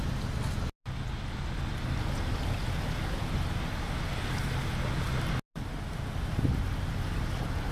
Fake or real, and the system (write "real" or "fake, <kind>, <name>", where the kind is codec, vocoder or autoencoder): real